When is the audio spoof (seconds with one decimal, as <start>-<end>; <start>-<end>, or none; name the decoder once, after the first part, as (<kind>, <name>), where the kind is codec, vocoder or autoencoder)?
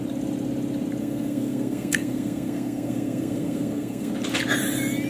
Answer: 1.0-4.1 (codec, SNAC)